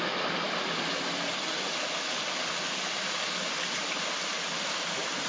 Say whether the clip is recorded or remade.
recorded